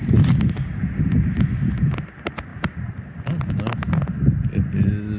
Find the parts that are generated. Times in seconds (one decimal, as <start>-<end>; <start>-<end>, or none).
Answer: none